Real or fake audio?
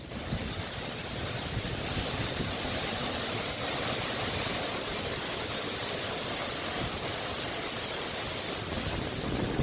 real